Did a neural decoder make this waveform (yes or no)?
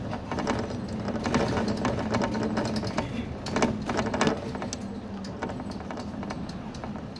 no